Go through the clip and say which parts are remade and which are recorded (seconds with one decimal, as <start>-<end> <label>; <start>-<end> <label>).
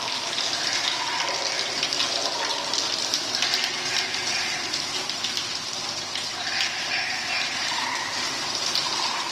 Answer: 0.0-4.3 recorded; 4.3-8.9 remade; 8.9-9.3 recorded